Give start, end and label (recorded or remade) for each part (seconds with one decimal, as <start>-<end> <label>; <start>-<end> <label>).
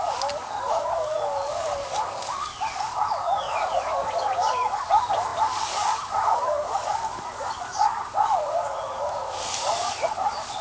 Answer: 0.0-10.6 remade